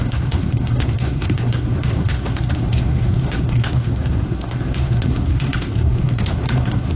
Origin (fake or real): fake